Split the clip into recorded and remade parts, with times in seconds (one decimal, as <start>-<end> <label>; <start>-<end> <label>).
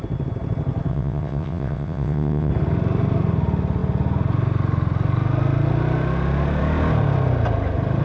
0.0-0.9 recorded; 0.9-2.5 remade; 2.5-8.0 recorded